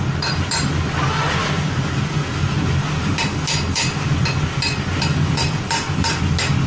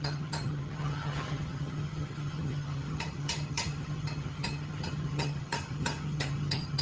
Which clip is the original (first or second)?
first